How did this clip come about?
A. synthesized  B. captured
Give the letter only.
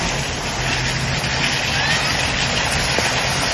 B